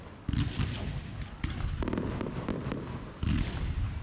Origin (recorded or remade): remade